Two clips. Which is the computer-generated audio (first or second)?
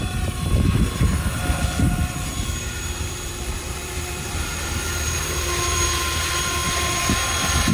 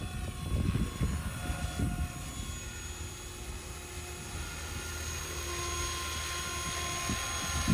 first